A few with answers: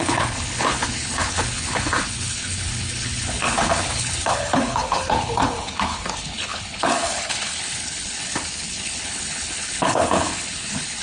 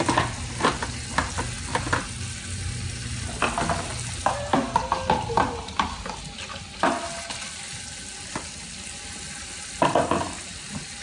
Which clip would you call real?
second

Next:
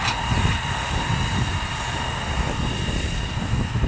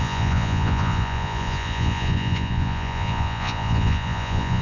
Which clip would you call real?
first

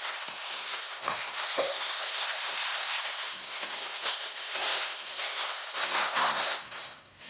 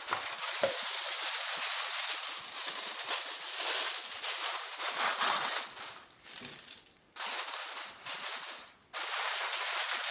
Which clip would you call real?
second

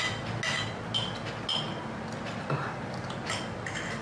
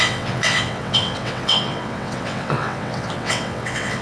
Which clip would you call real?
first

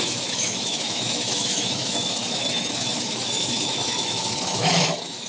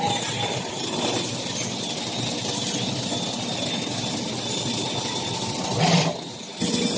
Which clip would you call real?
second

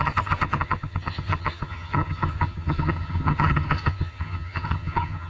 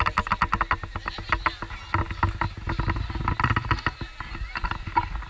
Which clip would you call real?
second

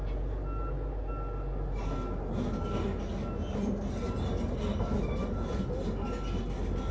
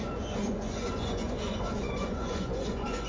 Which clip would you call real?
first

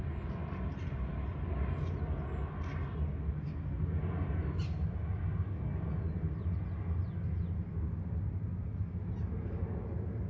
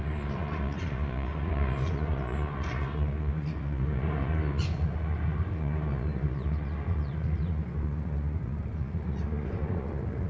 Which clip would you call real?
first